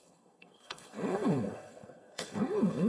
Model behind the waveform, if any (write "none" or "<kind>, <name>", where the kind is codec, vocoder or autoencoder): codec, SNAC